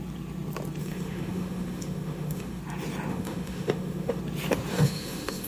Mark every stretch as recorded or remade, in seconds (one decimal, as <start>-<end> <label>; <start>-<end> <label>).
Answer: 0.0-0.8 recorded; 0.8-2.6 remade; 2.6-3.1 recorded; 3.1-4.2 remade; 4.2-4.7 recorded; 4.7-5.5 remade